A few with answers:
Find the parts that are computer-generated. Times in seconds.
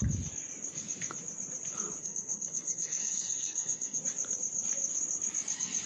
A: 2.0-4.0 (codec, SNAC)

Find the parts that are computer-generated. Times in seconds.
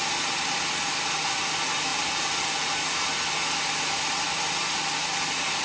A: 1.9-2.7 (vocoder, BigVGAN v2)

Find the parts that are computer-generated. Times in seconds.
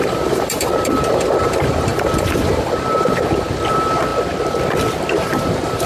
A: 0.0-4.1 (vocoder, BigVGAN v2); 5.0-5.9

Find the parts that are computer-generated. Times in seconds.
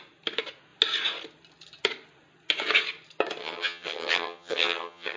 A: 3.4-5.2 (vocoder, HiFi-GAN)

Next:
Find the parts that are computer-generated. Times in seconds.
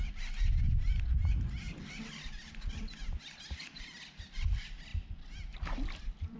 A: none